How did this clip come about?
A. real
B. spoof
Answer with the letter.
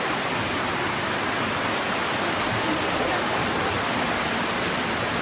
A